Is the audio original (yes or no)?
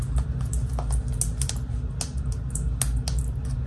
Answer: yes